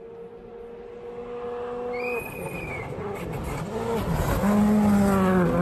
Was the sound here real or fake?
real